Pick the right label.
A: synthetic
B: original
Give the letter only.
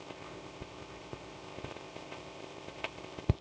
A